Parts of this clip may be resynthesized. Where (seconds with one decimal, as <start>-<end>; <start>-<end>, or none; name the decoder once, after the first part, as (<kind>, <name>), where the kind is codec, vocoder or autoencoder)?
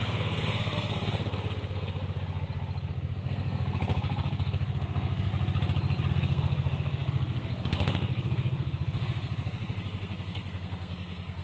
0.0-2.0 (codec, SNAC); 2.9-5.3; 6.1-11.4